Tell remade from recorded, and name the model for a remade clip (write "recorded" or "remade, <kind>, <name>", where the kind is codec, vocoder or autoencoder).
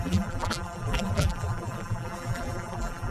remade, vocoder, BigVGAN v2